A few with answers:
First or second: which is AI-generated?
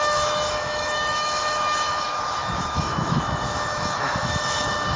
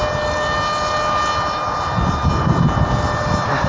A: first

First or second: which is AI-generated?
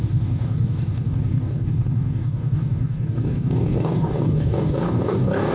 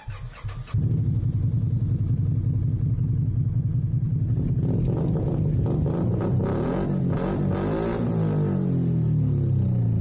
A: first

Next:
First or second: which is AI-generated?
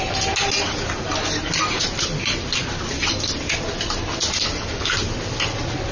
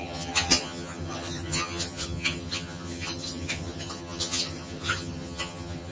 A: second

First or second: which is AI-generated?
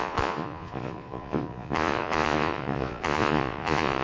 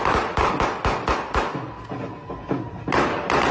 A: first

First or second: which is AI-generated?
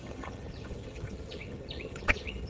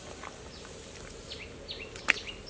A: first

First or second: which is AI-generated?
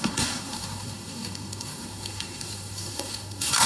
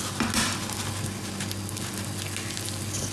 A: first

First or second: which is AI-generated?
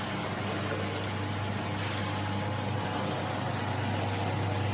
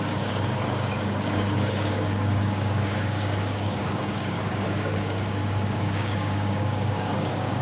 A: second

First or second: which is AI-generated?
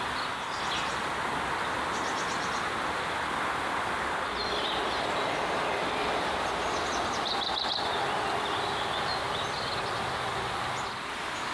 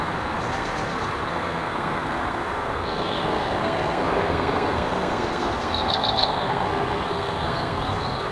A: second